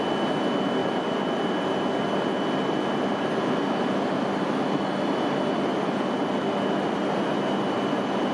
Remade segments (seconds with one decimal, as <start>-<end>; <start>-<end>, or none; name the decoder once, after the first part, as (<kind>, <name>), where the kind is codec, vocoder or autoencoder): 0.8-1.8 (vocoder, BigVGAN v2)